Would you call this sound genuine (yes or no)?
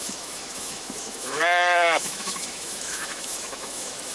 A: no